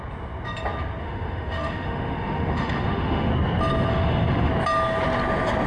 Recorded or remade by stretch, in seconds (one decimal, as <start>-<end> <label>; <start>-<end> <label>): 0.0-1.0 recorded; 1.0-3.3 remade; 3.3-3.9 recorded; 3.9-4.5 remade; 4.5-5.7 recorded